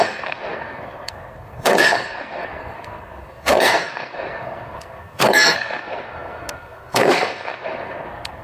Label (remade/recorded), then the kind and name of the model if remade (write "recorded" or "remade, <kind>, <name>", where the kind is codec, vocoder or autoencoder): remade, codec, SNAC